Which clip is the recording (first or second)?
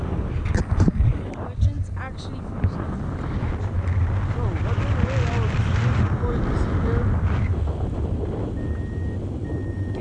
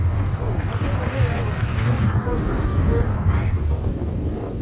first